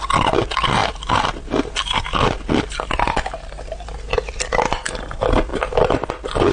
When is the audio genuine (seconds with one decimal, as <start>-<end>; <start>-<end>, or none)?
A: 0.0-6.5